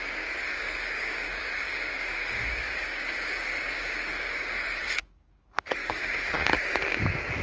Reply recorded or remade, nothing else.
remade